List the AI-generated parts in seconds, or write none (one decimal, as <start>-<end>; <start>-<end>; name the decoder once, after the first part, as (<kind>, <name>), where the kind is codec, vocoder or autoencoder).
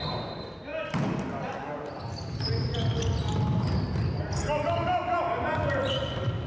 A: none